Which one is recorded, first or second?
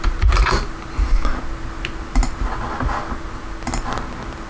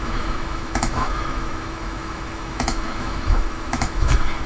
first